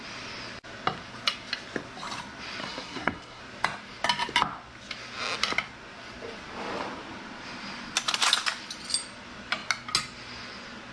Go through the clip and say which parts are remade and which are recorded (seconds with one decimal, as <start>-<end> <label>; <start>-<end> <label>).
0.0-2.6 recorded; 2.6-3.4 remade; 3.4-10.9 recorded